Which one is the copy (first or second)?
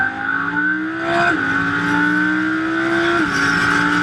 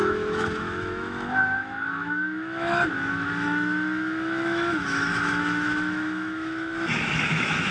second